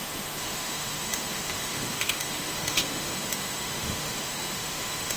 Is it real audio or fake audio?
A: fake